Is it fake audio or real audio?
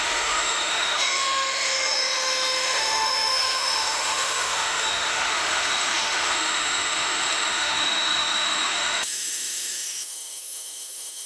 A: fake